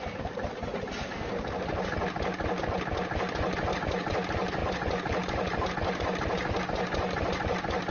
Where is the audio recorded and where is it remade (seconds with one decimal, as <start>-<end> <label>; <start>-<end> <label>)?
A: 0.0-7.9 recorded